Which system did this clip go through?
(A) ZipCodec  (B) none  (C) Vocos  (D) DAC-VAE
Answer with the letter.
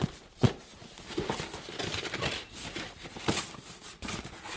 B